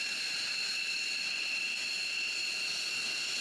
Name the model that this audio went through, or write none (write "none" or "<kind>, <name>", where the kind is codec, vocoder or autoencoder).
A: none